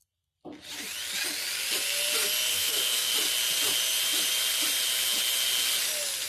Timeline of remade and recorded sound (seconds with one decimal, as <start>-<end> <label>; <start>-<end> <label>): 0.0-2.5 recorded; 2.5-3.1 remade; 3.1-6.3 recorded